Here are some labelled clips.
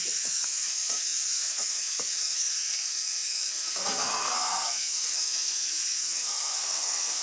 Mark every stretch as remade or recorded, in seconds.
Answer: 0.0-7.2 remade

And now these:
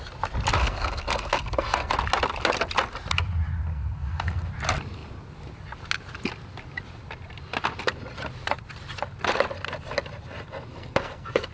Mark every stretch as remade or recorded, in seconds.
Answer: 0.0-0.6 recorded; 0.6-1.9 remade; 1.9-3.7 recorded; 3.7-4.5 remade; 4.5-10.7 recorded; 10.7-11.5 remade

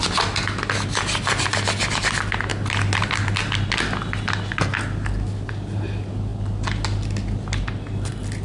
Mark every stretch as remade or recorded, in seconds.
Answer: 0.0-8.4 recorded

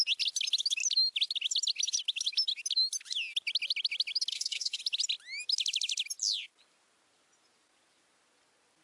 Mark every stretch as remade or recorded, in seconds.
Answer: 0.0-4.3 recorded; 4.3-4.8 remade; 4.8-8.8 recorded

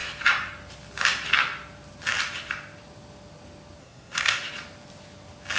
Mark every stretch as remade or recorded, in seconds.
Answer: 0.0-3.8 recorded; 3.8-4.4 remade; 4.4-5.6 recorded